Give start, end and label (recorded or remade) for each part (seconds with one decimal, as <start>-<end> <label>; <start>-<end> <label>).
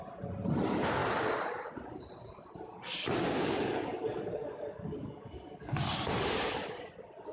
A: 0.0-3.0 recorded; 3.0-6.2 remade; 6.2-7.3 recorded